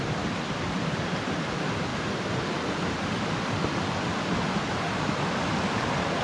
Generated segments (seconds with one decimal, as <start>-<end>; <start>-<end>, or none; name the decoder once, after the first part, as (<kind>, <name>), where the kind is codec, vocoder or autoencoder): none